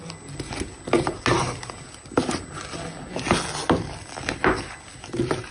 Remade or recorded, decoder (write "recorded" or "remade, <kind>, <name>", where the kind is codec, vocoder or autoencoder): recorded